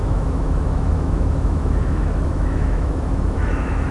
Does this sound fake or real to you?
fake